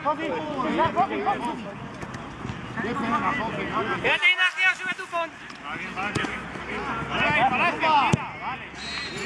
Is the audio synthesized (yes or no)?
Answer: no